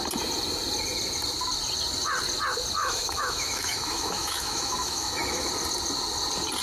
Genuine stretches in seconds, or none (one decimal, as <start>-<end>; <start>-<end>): 0.0-2.8; 5.5-6.6